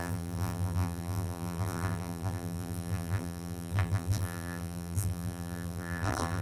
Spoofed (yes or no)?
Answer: yes